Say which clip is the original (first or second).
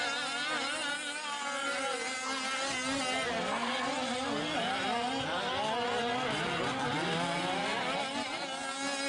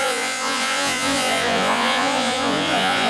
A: first